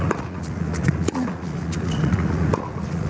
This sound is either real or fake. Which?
fake